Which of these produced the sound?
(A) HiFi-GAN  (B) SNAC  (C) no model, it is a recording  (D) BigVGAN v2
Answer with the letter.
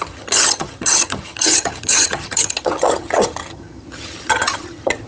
A